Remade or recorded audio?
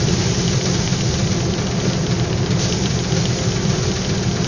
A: recorded